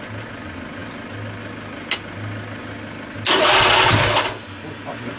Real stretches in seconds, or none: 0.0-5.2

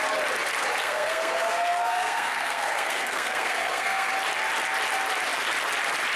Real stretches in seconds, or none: 0.0-0.8; 4.1-6.2

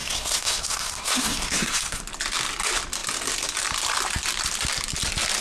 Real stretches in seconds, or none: 2.0-5.4

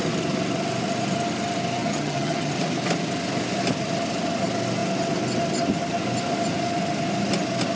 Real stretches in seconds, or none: 0.0-1.8; 2.5-7.8

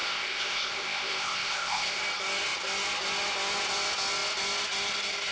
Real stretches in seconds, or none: 2.0-5.3